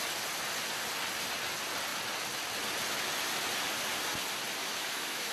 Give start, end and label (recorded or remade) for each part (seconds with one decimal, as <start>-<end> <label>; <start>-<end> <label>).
0.0-4.6 recorded; 4.6-5.3 remade